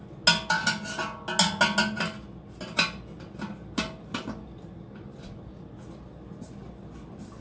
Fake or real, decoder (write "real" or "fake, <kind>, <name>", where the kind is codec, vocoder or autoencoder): real